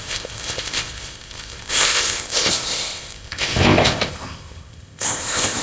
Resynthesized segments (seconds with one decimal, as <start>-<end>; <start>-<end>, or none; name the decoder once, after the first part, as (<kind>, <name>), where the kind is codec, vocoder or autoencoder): 0.0-5.6 (codec, ZipCodec)